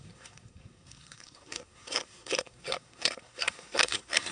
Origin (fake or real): fake